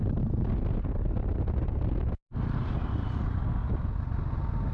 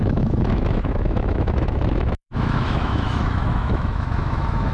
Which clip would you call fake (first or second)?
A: second